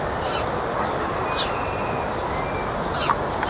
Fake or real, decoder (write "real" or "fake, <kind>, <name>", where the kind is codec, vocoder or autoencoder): real